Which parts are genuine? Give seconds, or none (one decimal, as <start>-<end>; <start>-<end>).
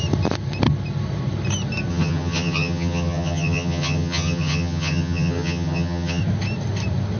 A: 0.0-1.9; 6.2-7.2